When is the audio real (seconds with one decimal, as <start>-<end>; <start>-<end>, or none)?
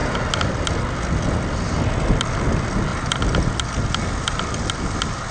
0.0-2.9; 3.5-5.3